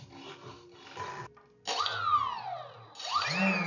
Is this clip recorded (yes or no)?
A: yes